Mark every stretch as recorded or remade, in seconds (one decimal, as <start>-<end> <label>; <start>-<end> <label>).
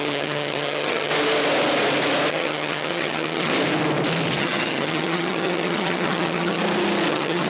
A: 0.0-1.1 remade; 1.1-2.3 recorded; 2.3-3.5 remade; 3.5-4.4 recorded; 4.4-6.6 remade; 6.6-7.1 recorded; 7.1-7.5 remade